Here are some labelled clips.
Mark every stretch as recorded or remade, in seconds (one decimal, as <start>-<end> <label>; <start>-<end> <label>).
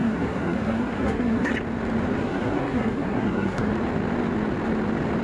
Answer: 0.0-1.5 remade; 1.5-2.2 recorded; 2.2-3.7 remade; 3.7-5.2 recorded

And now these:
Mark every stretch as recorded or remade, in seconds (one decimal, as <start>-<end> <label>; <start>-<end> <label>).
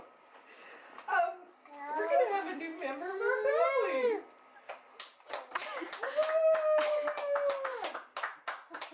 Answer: 0.0-8.9 recorded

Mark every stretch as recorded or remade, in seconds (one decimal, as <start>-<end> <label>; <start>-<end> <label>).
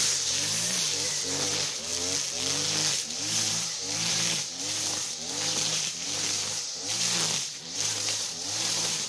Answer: 0.0-1.9 remade; 1.9-2.9 recorded; 2.9-9.1 remade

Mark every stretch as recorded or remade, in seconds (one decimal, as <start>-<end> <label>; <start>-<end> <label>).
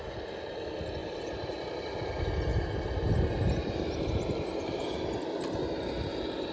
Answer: 0.0-1.0 recorded; 1.0-2.0 remade; 2.0-2.5 recorded; 2.5-4.5 remade; 4.5-6.5 recorded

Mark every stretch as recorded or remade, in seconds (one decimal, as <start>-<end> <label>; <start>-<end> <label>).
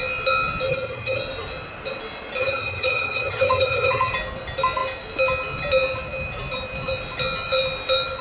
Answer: 0.0-0.7 recorded; 0.7-1.2 remade; 1.2-2.4 recorded; 2.4-4.1 remade; 4.1-8.2 recorded